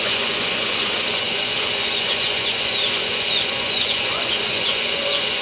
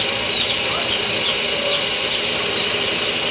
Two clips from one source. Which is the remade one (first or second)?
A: first